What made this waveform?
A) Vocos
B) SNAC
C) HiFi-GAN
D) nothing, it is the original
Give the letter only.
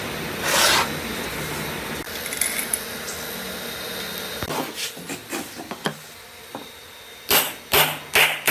D